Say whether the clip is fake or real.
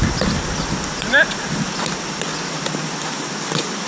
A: real